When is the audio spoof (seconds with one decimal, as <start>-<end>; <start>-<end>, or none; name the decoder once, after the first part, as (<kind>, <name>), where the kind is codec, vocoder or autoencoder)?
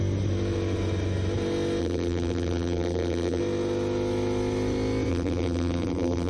1.8-3.4 (vocoder, BigVGAN v2); 5.1-6.3